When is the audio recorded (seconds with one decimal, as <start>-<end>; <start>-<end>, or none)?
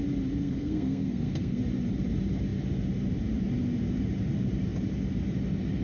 0.0-0.4; 1.6-5.8